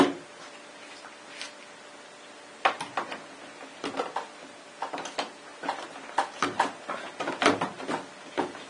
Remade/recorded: recorded